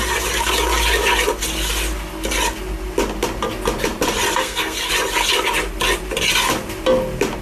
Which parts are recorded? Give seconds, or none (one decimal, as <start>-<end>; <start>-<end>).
0.0-4.4; 4.9-7.4